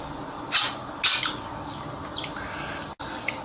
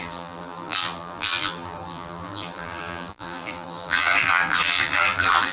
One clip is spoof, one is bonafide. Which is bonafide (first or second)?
first